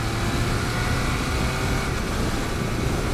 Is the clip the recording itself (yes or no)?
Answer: yes